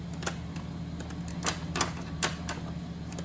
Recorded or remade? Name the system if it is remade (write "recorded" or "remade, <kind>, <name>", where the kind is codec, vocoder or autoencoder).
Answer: recorded